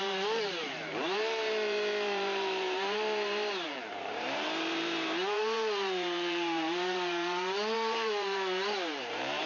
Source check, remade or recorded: remade